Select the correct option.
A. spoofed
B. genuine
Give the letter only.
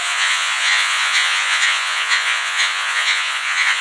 A